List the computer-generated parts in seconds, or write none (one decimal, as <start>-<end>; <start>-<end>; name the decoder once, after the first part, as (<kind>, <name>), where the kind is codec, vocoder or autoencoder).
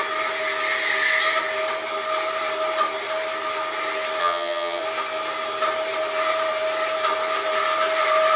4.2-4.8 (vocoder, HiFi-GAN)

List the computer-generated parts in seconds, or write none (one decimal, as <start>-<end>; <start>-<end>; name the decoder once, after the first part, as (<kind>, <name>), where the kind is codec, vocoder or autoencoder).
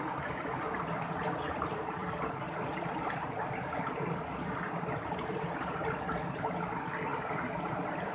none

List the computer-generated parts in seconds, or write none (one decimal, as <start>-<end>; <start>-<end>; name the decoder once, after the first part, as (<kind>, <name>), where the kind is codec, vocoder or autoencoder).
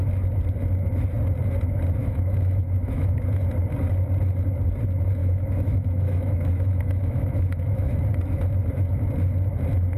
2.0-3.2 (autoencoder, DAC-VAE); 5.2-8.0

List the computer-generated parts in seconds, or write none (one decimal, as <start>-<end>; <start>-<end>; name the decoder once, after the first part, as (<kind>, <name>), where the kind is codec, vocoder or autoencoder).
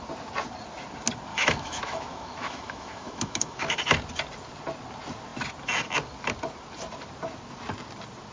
1.3-3.8 (autoencoder, DAC-VAE)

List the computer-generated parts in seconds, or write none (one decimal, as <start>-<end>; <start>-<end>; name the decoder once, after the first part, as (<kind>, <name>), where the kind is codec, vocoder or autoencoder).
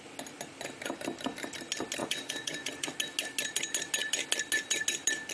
2.0-2.9 (vocoder, Vocos)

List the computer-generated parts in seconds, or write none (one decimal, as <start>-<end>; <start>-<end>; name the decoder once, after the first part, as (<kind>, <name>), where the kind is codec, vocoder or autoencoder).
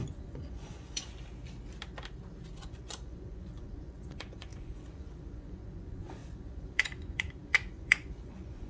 0.0-1.1 (vocoder, Vocos); 2.6-8.7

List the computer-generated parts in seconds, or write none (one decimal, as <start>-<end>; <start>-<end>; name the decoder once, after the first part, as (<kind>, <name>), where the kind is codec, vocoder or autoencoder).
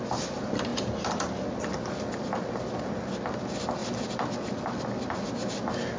none